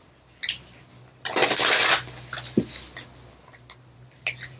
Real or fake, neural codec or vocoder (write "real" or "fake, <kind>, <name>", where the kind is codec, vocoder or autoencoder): real